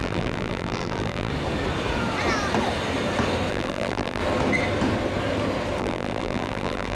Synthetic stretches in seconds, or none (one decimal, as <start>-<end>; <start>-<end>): 0.0-1.3; 3.5-4.2; 5.8-6.9

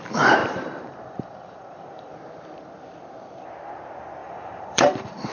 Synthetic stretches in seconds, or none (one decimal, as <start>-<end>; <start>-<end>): 0.4-2.1; 4.2-5.3